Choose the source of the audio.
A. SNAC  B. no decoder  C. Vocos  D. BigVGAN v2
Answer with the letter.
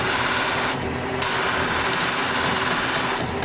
D